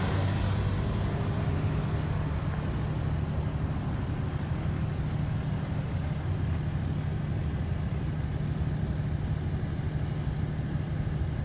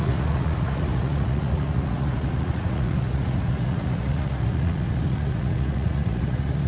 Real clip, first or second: first